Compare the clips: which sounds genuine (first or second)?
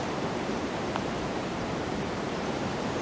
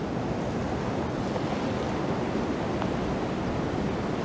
second